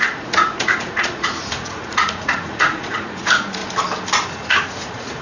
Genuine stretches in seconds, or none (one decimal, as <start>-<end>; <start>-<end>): 3.6-4.3